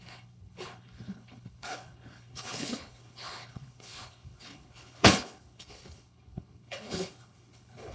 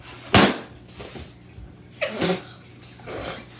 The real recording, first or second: second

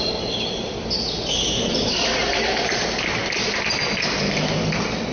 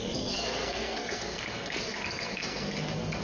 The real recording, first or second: first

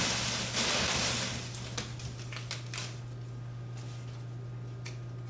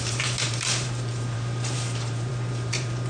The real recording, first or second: first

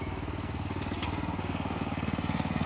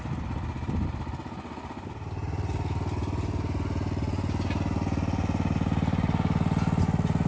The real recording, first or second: second